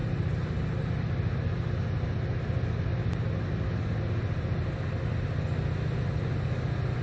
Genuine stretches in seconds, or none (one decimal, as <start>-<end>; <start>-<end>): 0.0-7.0